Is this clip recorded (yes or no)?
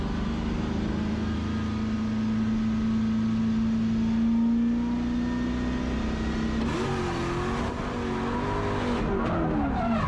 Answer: yes